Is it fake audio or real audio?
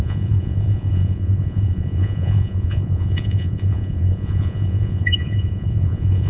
fake